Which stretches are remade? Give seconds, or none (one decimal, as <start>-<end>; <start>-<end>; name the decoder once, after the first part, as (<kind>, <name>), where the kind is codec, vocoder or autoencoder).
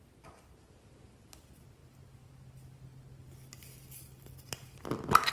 none